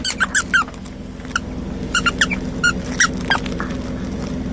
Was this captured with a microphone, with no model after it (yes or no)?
yes